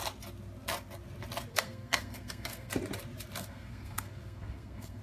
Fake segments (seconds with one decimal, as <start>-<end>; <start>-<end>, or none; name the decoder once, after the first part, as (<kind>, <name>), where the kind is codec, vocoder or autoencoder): 1.5-2.7 (codec, SNAC); 3.4-5.0